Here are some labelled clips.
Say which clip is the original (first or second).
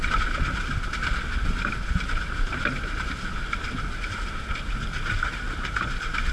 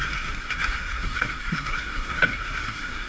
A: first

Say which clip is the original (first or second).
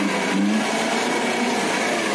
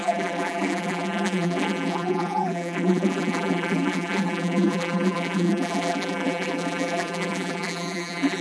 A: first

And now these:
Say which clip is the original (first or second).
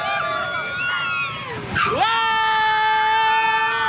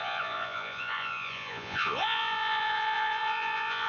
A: first